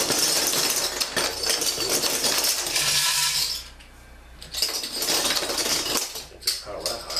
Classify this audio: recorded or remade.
recorded